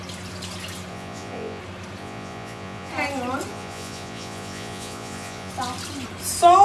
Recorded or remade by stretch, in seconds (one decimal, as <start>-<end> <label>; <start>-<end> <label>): 0.0-0.9 recorded; 0.9-1.6 remade; 1.6-2.0 recorded; 2.0-2.9 remade; 2.9-3.5 recorded; 3.5-5.5 remade; 5.5-6.6 recorded